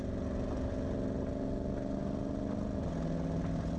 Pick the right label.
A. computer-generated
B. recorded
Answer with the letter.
B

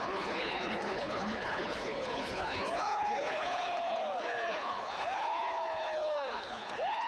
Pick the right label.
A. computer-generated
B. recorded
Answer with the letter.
A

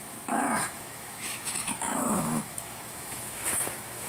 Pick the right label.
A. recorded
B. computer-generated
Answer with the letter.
B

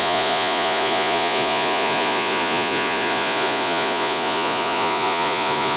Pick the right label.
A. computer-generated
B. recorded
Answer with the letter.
A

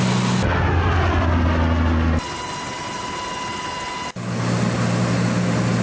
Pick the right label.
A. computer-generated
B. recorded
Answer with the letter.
B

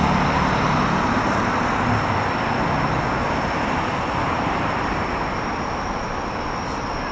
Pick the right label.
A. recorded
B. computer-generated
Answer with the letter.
A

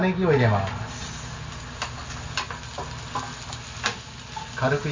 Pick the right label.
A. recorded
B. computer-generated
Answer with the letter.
A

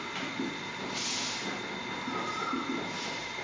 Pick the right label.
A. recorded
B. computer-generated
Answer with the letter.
A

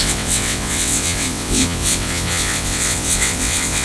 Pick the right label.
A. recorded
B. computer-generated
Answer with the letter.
B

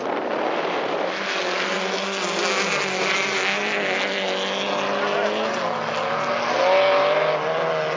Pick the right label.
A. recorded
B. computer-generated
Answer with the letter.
A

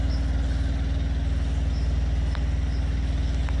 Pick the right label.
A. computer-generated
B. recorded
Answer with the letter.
B